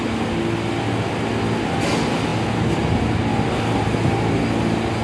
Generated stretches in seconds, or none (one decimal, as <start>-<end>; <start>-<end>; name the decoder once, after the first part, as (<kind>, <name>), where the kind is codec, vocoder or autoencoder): none